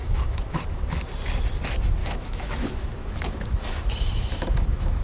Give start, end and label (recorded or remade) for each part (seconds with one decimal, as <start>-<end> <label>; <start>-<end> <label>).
0.0-0.6 remade; 0.6-2.0 recorded; 2.0-5.0 remade